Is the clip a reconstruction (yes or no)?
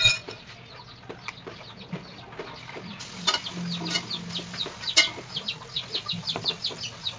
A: no